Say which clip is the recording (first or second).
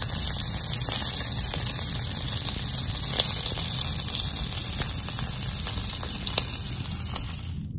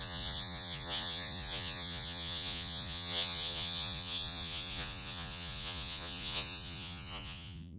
first